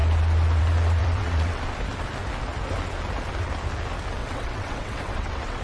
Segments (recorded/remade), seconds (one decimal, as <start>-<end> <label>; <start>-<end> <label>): 0.0-1.0 recorded; 1.0-1.6 remade; 1.6-4.2 recorded; 4.2-5.6 remade